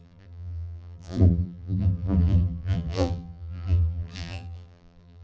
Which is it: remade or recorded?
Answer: remade